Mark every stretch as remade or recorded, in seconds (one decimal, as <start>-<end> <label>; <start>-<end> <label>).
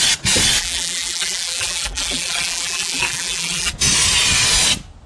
0.0-0.6 recorded; 0.6-3.7 remade; 3.7-5.1 recorded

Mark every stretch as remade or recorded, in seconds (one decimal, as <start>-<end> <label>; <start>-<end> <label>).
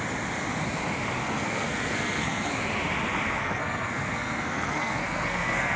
0.0-1.2 recorded; 1.2-2.5 remade; 2.5-3.4 recorded; 3.4-5.8 remade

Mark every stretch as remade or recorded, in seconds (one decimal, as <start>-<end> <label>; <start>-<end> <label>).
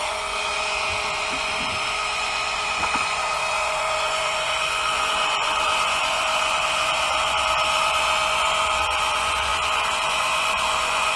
0.0-11.2 remade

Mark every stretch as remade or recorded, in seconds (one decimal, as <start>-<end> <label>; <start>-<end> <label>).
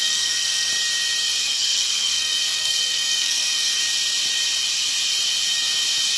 0.0-0.7 remade; 0.7-1.4 recorded; 1.4-3.8 remade; 3.8-6.2 recorded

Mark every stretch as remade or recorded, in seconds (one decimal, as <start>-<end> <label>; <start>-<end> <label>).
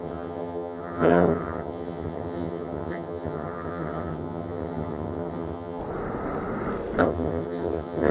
0.0-5.8 remade; 5.8-7.0 recorded; 7.0-8.1 remade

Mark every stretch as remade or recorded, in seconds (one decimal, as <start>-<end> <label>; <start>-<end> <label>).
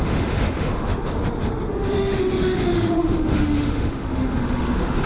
0.0-1.2 remade; 1.2-1.7 recorded; 1.7-5.1 remade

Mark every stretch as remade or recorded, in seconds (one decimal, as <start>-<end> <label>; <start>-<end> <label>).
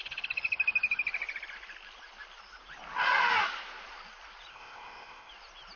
0.0-4.5 recorded; 4.5-5.3 remade; 5.3-5.8 recorded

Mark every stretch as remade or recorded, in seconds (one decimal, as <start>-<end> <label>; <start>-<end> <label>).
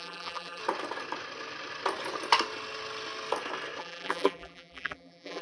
0.0-0.6 remade; 0.6-3.8 recorded; 3.8-5.4 remade